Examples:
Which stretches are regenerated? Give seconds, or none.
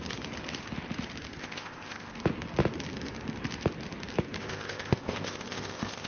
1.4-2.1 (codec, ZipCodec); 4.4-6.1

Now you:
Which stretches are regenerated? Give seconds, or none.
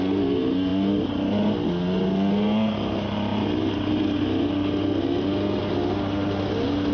none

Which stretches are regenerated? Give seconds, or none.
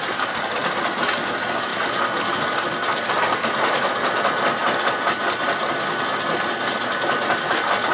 none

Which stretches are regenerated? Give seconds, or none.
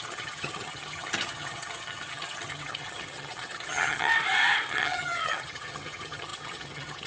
0.0-4.1 (vocoder, HiFi-GAN); 4.7-7.1